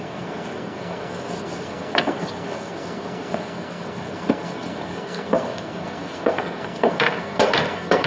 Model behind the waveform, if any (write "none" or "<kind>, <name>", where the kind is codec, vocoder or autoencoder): codec, SNAC